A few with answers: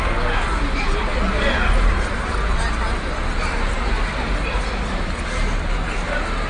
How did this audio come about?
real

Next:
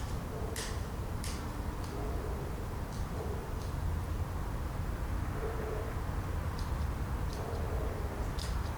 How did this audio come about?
fake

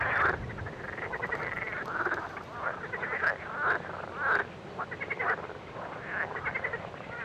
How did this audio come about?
real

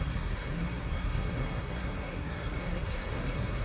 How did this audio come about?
fake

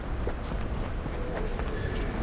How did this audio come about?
real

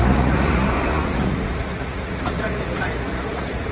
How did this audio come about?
fake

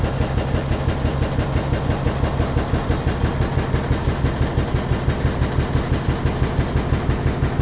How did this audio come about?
real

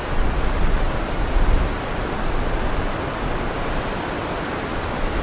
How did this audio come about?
real